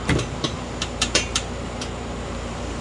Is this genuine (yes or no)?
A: no